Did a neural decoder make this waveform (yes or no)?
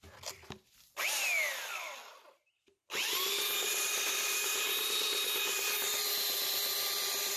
no